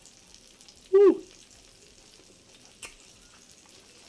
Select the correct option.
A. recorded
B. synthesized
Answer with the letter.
A